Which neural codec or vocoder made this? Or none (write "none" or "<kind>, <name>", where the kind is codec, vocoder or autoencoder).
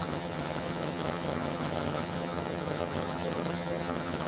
vocoder, HiFi-GAN